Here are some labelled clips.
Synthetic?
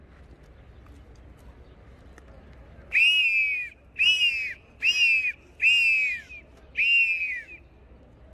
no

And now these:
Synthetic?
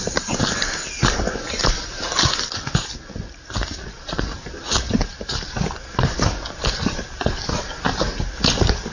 no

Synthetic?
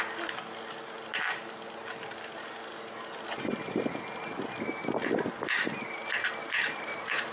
no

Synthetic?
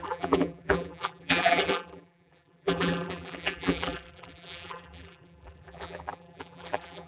yes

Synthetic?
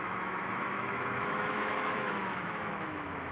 yes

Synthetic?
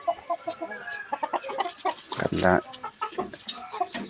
no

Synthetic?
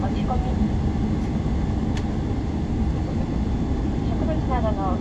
no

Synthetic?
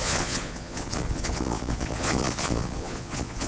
yes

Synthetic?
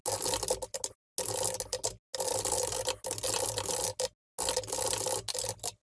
no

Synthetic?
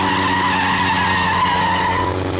no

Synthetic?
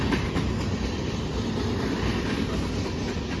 no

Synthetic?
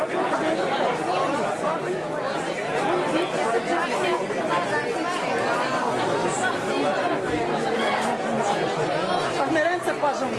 no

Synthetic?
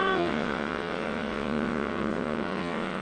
yes